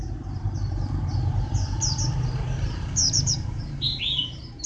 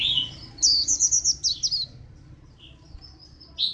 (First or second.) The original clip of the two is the second